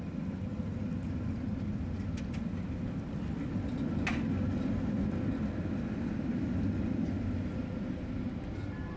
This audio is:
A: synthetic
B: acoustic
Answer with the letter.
B